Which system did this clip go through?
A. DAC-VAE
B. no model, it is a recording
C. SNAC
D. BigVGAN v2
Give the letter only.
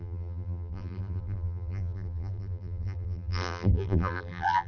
D